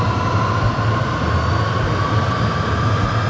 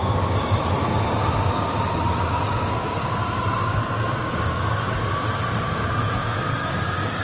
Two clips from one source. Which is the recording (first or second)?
first